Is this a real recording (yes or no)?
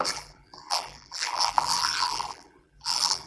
no